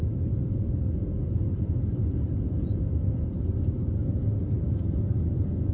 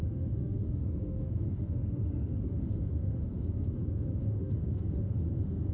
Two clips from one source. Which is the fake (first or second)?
second